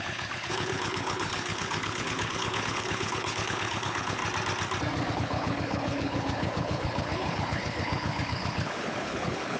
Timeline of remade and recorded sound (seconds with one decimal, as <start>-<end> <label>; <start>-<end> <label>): 0.0-4.2 remade; 4.2-5.1 recorded; 5.1-9.6 remade